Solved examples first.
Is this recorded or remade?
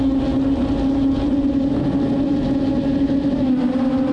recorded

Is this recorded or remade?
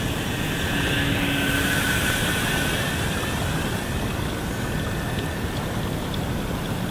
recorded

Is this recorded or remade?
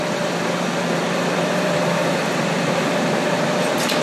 remade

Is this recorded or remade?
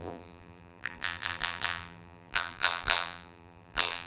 remade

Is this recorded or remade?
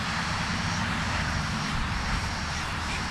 remade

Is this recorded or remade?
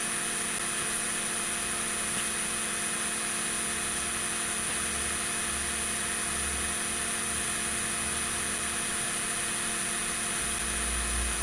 recorded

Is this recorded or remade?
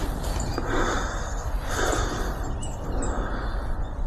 recorded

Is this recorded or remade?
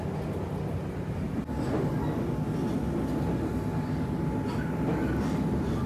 recorded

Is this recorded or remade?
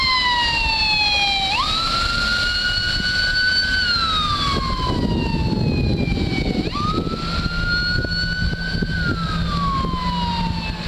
recorded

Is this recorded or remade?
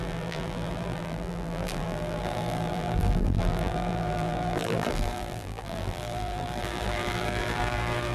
remade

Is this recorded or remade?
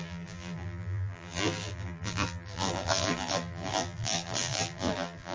remade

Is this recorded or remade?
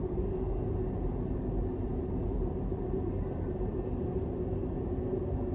remade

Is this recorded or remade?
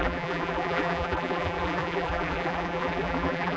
remade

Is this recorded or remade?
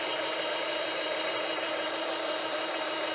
remade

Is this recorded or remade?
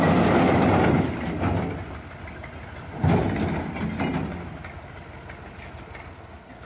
recorded